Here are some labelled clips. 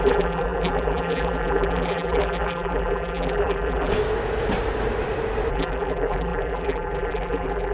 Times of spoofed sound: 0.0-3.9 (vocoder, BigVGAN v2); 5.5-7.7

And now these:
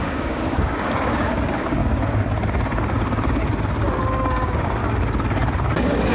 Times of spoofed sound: 0.0-1.8 (codec, DAC); 4.0-4.8

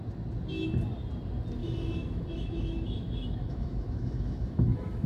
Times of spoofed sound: 1.6-5.1 (autoencoder, DAC-VAE)

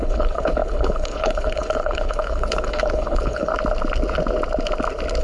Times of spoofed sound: 0.0-3.5 (codec, HILCodec)

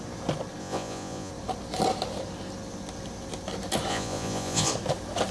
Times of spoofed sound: 0.6-1.3 (vocoder, Vocos); 3.9-4.7

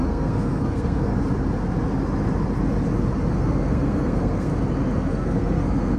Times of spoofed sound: 0.0-1.1 (codec, SNAC); 3.3-4.5; 5.1-6.0

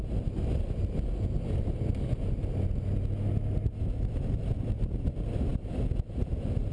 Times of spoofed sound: none